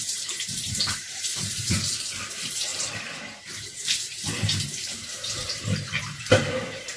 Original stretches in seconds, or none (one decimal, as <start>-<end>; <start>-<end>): 2.7-3.5